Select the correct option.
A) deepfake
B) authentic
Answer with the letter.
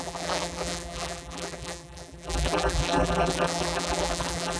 A